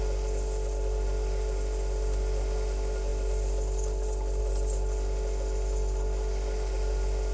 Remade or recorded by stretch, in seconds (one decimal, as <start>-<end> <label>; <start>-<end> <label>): 0.0-7.3 recorded